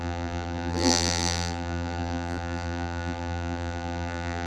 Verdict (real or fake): fake